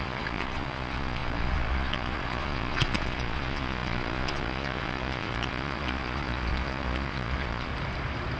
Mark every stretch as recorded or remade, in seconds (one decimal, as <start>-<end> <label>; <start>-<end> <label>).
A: 0.0-7.7 remade; 7.7-8.4 recorded